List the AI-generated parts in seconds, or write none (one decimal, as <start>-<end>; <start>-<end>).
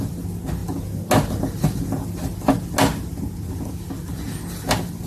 none